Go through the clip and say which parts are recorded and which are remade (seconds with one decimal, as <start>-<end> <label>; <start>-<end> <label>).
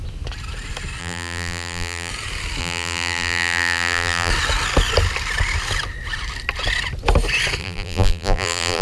0.0-1.0 recorded; 1.0-2.1 remade; 2.1-2.6 recorded; 2.6-4.3 remade; 4.3-7.6 recorded; 7.6-8.8 remade